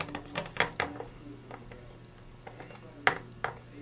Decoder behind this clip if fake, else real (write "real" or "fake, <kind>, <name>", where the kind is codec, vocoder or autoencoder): real